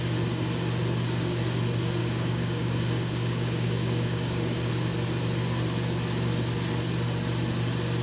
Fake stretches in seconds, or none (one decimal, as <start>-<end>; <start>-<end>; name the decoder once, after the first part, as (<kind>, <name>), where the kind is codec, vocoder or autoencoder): 2.0-4.7 (codec, DAC)